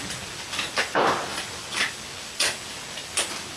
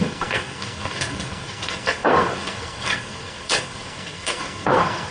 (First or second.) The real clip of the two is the first